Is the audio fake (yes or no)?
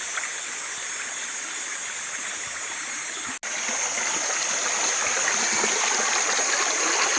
no